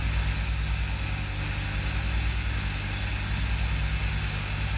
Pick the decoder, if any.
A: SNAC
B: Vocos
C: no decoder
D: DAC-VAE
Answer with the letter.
C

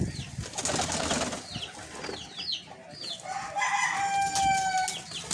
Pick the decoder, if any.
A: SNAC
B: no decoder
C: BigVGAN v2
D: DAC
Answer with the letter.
B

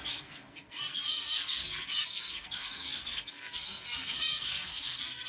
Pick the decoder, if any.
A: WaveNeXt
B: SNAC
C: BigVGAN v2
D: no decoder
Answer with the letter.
B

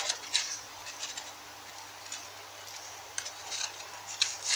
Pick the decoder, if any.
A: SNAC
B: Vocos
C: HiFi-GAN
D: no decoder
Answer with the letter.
D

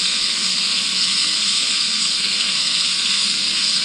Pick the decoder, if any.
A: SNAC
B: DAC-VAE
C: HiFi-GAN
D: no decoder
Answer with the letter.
A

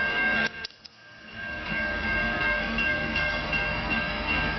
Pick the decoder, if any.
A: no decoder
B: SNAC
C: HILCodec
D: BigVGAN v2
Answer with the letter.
B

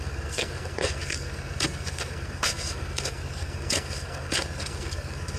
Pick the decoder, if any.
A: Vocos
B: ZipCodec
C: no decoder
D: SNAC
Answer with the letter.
D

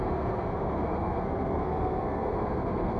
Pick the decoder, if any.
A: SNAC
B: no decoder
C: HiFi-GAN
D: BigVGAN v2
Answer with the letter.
A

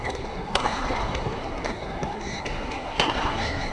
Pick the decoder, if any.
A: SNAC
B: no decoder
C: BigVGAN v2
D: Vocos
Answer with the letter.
A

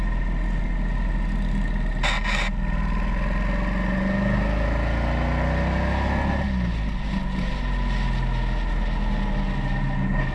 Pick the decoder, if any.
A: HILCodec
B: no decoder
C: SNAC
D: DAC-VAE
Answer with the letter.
B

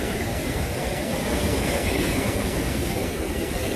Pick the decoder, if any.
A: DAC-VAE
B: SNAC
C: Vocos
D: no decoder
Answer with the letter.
B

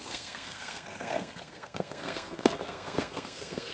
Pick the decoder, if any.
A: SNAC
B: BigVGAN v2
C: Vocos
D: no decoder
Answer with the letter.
A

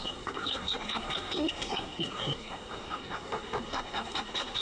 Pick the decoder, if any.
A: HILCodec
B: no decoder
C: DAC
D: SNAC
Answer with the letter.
D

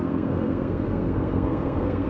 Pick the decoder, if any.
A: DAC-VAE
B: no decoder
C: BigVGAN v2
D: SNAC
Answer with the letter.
D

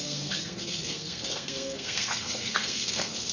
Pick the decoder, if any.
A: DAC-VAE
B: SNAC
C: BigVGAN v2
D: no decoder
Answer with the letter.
B